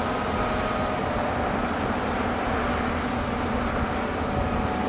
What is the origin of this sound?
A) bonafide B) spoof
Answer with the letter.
A